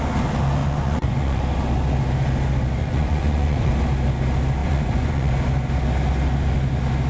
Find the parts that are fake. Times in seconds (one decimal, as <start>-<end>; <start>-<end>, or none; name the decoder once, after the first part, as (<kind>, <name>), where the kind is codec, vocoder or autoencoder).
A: 0.6-1.4 (vocoder, Vocos); 2.8-3.7; 4.6-5.3